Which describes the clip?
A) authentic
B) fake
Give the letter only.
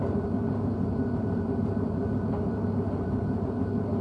B